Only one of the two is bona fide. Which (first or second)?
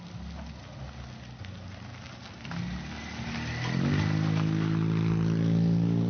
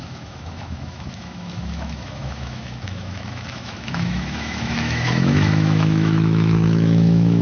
first